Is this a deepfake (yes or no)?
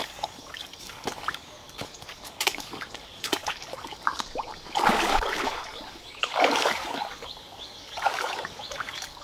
yes